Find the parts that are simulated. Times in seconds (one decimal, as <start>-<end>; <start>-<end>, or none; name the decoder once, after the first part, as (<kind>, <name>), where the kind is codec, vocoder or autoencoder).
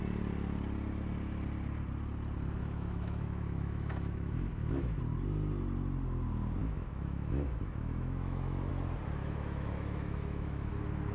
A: 2.6-5.0 (autoencoder, DAC-VAE); 6.6-8.7; 9.2-10.7